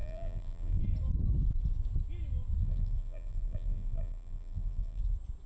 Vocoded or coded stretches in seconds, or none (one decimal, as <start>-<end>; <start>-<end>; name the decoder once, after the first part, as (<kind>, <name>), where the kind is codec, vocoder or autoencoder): 0.0-0.8 (vocoder, BigVGAN v2); 2.6-5.0